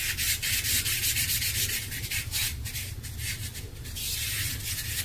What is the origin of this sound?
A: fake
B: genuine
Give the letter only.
B